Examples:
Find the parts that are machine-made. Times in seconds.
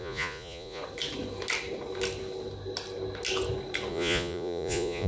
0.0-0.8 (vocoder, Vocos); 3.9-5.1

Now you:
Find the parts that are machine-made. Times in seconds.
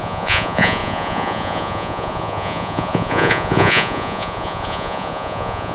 0.0-5.7 (vocoder, Vocos)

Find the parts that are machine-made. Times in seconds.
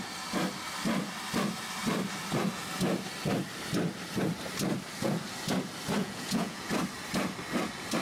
6.0-6.7 (vocoder, Vocos)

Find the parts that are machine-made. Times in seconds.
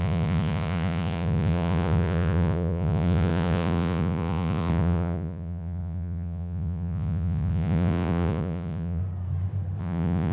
0.0-9.0 (vocoder, Vocos); 9.8-10.3